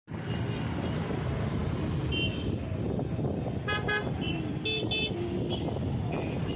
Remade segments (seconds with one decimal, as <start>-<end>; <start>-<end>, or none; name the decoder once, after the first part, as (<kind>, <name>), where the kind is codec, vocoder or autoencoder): none